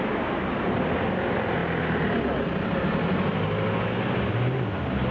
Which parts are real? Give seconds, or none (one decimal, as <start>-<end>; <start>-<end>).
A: 0.0-5.1